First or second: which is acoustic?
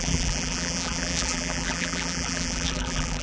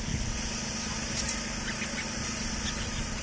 second